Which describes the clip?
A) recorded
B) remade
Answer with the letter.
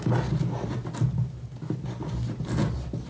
A